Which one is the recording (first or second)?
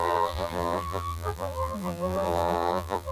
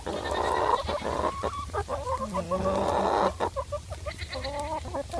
second